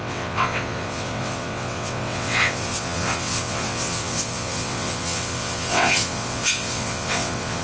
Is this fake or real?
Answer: fake